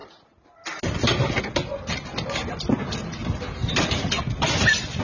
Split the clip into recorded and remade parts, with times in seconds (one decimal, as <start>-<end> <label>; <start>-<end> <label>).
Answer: 0.0-3.6 recorded; 3.6-5.0 remade